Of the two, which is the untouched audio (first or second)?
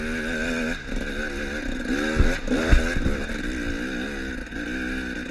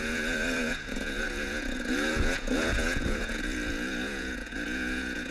first